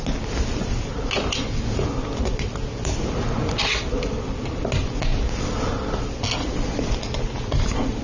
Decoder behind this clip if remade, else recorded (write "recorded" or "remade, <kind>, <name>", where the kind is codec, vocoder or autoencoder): recorded